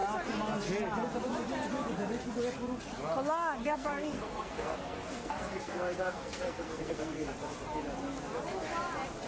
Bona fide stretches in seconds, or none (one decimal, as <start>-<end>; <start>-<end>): 0.0-3.6; 7.3-9.3